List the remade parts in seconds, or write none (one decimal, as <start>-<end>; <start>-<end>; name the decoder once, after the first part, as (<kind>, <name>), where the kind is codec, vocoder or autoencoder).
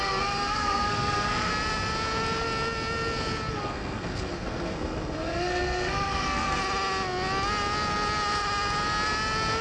0.0-1.5 (codec, SNAC); 3.5-6.6